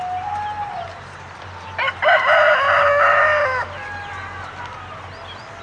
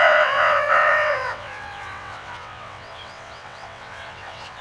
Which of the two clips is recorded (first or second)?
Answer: first